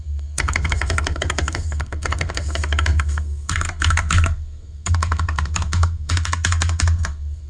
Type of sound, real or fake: fake